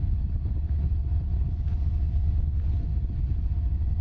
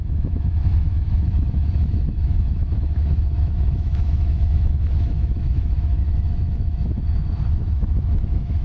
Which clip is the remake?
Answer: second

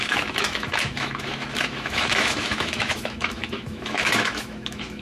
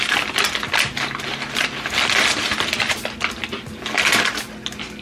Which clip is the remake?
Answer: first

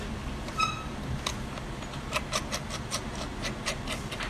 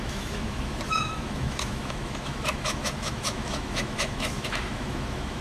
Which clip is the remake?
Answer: second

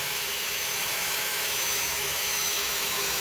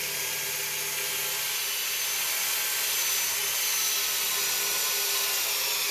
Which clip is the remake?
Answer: first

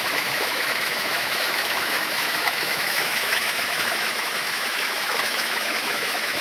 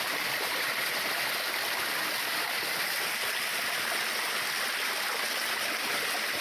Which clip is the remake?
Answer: first